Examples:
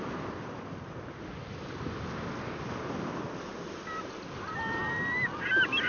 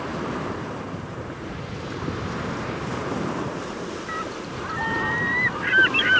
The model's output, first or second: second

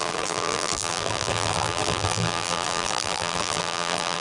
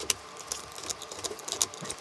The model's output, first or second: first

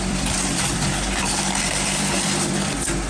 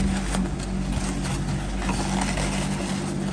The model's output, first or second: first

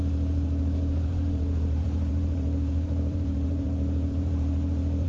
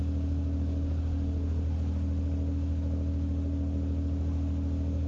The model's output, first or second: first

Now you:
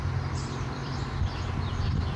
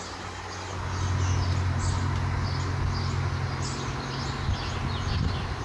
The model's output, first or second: first